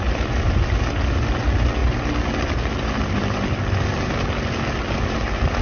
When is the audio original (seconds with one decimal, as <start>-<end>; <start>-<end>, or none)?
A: 0.0-5.6